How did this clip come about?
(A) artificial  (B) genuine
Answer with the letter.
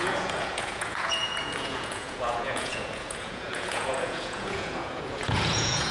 A